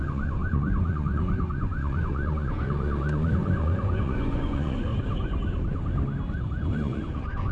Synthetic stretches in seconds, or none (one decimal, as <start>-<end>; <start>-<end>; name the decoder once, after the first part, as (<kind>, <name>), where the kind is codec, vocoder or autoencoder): 0.0-4.9 (vocoder, Vocos); 6.7-7.5